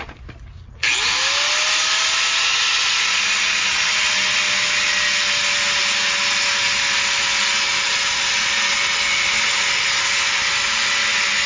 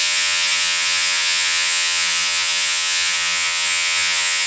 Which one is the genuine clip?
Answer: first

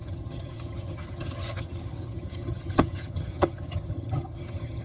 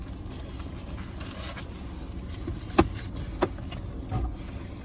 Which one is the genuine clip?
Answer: second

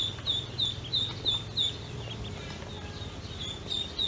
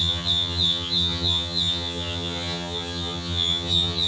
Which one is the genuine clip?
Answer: first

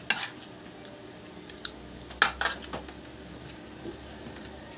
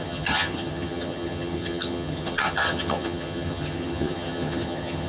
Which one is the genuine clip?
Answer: first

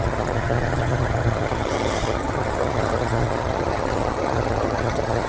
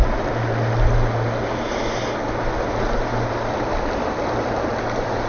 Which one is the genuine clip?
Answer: second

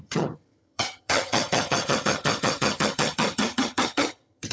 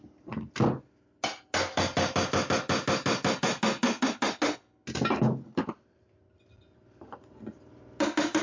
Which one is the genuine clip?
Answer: second